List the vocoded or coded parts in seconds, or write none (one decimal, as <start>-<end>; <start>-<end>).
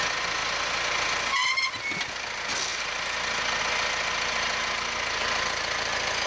none